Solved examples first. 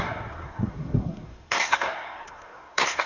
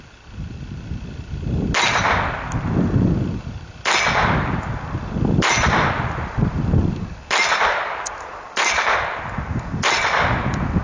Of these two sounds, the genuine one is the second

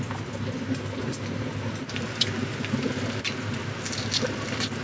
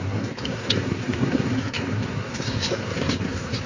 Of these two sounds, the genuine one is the first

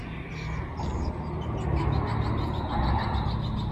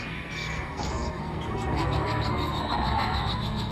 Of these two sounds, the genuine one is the first